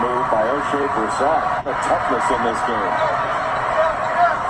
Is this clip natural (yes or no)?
no